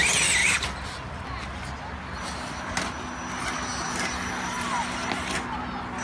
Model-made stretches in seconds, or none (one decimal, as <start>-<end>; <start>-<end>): none